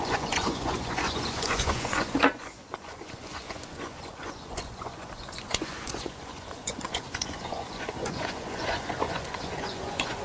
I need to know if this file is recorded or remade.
remade